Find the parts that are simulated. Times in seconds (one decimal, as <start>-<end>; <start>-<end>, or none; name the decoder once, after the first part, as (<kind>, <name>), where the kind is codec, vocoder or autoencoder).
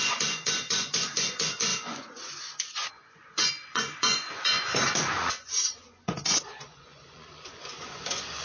0.0-8.4 (vocoder, Vocos)